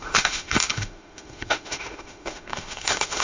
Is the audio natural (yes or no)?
no